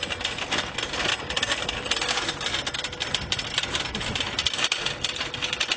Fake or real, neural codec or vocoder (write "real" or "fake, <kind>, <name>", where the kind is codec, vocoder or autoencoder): real